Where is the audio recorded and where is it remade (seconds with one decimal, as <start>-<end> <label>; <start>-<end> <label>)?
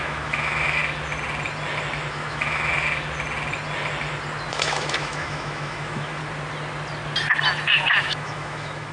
0.0-0.8 remade; 0.8-2.1 recorded; 2.1-2.7 remade; 2.7-4.5 recorded; 4.5-6.2 remade; 6.2-8.0 recorded; 8.0-8.9 remade